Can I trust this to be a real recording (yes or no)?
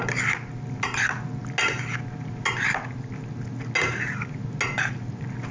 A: yes